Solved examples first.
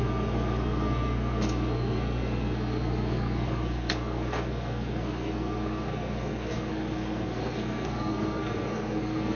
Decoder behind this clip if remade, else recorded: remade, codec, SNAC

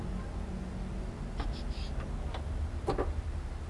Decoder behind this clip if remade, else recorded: recorded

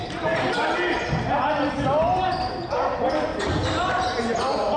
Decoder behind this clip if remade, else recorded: recorded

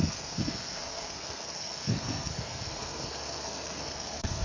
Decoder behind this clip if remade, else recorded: remade, codec, SNAC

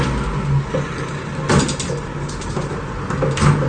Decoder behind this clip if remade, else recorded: recorded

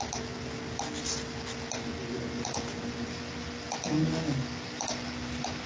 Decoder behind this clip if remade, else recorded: recorded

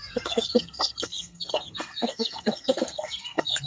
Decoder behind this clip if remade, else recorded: remade, codec, SNAC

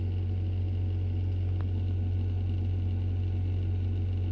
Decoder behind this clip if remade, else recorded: recorded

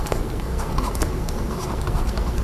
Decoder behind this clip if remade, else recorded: remade, codec, SNAC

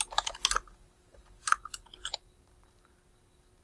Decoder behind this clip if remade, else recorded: recorded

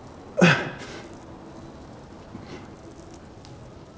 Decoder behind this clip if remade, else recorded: recorded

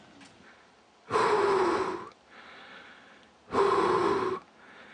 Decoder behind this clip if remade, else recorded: recorded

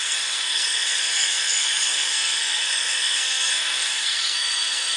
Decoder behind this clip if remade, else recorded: remade, codec, SNAC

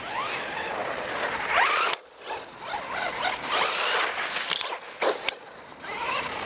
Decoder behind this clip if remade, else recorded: recorded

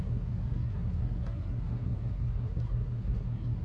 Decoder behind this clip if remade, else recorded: remade, codec, SNAC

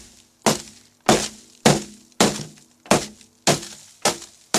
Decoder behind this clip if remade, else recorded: recorded